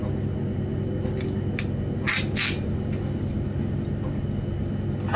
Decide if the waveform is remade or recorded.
recorded